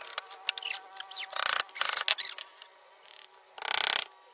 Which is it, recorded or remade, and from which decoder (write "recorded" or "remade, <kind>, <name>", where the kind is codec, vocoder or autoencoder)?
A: recorded